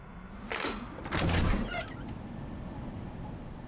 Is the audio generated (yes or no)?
no